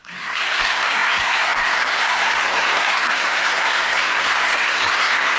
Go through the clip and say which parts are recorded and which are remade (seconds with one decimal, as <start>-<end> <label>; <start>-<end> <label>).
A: 0.0-5.4 remade